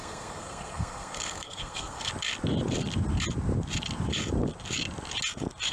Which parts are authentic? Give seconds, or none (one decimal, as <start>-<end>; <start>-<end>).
2.1-5.7